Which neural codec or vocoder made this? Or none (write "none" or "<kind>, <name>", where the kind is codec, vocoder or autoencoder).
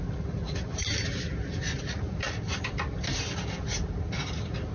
none